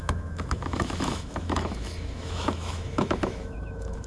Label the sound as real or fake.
fake